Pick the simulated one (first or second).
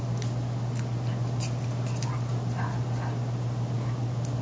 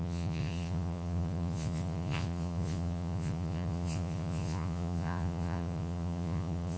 second